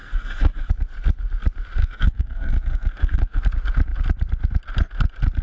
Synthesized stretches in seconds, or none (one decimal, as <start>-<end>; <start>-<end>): 0.0-0.7; 1.8-3.4